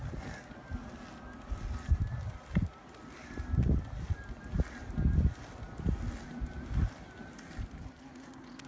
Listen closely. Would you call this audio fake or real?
real